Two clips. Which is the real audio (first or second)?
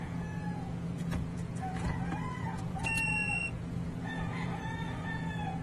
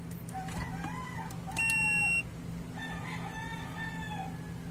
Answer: second